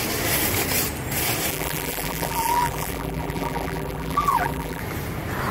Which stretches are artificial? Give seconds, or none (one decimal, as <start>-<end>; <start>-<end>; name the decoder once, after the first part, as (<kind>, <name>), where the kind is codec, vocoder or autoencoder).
1.5-4.8 (vocoder, BigVGAN v2)